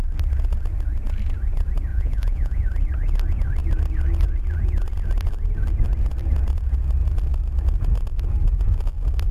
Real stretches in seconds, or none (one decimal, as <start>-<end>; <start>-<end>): 0.0-1.9; 2.6-9.3